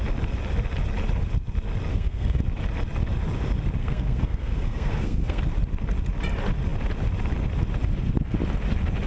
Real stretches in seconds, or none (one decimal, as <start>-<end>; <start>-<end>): 0.0-1.9; 2.4-3.8; 5.4-9.1